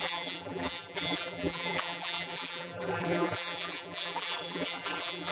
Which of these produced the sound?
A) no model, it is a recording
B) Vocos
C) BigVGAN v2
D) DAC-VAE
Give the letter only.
C